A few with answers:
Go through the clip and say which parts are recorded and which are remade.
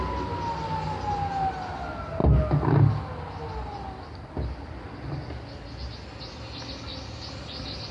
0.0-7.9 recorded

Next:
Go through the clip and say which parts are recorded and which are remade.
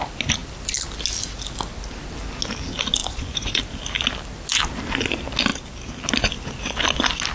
0.0-3.0 recorded; 3.0-3.6 remade; 3.6-7.3 recorded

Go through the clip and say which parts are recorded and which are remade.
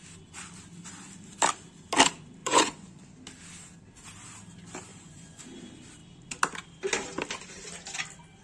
0.0-2.4 recorded; 2.4-3.0 remade; 3.0-4.9 recorded; 4.9-5.4 remade; 5.4-8.4 recorded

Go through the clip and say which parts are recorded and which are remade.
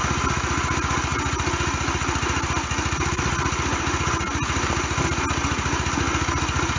0.0-6.8 recorded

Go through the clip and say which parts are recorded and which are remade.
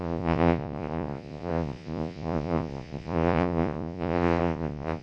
0.0-5.0 remade